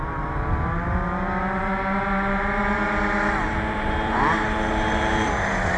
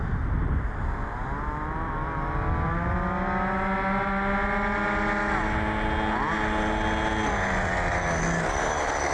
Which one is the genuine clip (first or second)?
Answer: second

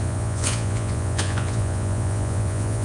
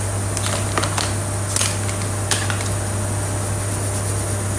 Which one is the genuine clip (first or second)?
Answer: second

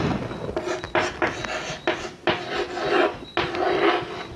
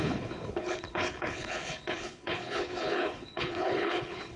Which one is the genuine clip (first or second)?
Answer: first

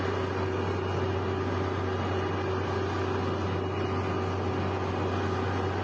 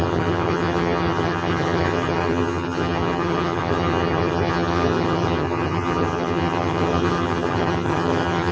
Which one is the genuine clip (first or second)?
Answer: first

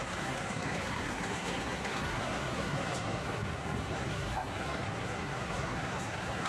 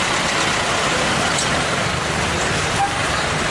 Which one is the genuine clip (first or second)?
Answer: second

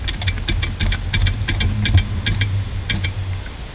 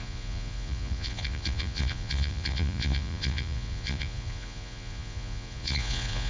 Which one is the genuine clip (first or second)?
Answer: first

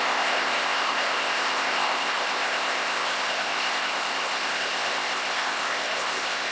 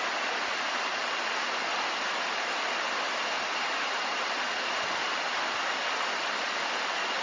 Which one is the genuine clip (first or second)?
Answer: second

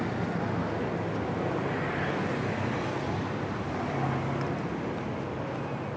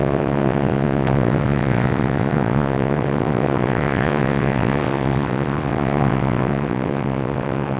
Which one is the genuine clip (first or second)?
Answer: first